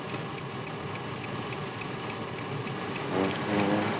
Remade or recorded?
recorded